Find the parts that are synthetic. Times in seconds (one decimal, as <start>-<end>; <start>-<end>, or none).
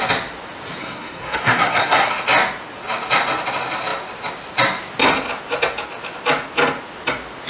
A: 0.8-2.1